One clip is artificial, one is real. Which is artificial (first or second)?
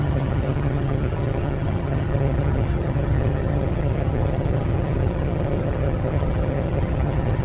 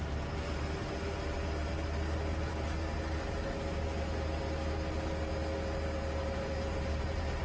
first